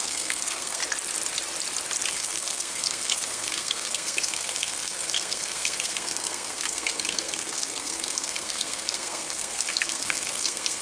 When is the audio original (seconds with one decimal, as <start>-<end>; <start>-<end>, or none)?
0.8-2.1

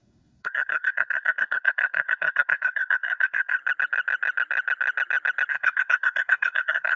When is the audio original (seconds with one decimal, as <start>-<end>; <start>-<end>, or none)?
3.6-5.5

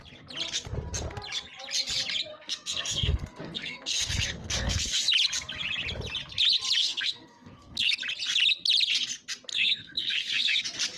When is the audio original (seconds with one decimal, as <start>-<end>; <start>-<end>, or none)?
0.0-2.3; 5.0-6.8; 7.9-9.5; 10.6-11.0